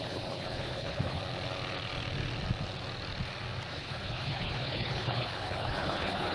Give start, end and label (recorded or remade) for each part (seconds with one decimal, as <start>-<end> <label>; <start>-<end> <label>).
0.0-1.2 remade; 1.2-3.7 recorded; 3.7-6.3 remade